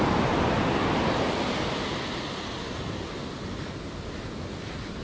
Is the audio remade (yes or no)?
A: no